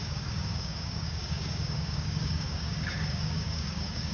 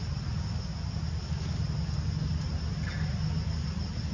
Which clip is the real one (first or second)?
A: second